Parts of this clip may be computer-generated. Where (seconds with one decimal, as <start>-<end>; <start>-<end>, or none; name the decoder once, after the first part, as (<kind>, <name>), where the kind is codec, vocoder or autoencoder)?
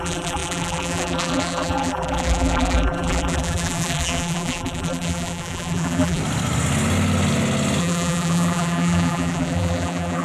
0.0-6.2 (vocoder, BigVGAN v2); 7.8-10.2